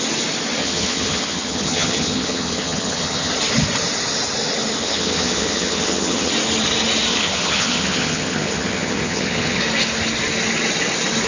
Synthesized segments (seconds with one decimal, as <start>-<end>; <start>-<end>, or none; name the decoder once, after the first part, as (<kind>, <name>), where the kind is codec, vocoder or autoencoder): 0.6-3.3 (vocoder, HiFi-GAN); 4.8-6.3; 7.1-9.6

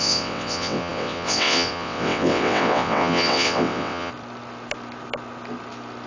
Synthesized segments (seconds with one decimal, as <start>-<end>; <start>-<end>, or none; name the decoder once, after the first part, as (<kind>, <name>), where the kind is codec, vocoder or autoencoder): 0.0-4.1 (vocoder, WaveNeXt)

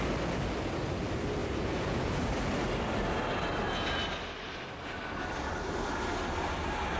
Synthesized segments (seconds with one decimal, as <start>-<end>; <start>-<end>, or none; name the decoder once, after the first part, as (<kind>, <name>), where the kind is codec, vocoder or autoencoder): 1.4-2.2 (vocoder, Vocos)

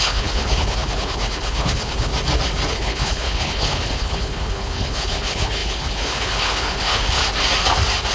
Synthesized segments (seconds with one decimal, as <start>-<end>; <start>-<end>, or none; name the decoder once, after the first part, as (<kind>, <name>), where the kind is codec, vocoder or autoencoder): 0.0-2.1 (codec, HILCodec); 2.7-7.2

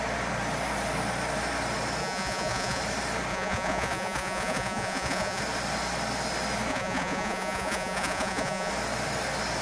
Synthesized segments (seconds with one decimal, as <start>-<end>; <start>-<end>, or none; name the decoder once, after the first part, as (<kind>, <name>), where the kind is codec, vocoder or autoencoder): 2.0-2.8 (vocoder, Vocos); 3.3-5.4; 6.7-8.7

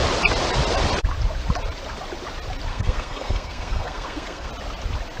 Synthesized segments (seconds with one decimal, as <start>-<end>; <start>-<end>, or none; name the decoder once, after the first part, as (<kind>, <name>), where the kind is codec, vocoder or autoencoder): 2.7-4.5 (codec, SNAC)

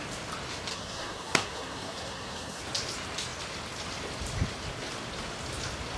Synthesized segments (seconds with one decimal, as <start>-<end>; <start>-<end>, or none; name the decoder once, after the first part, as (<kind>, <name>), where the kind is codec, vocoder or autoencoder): 0.7-2.6 (codec, SNAC)